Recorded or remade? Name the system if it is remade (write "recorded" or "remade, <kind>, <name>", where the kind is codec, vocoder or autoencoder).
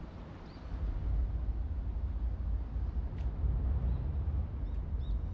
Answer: recorded